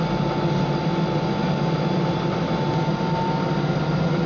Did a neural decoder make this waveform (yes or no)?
no